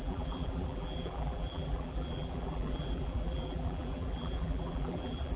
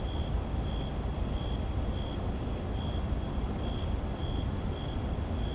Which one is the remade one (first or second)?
first